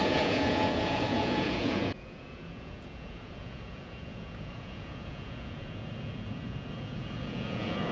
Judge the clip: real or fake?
fake